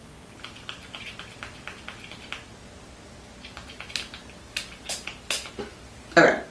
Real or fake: real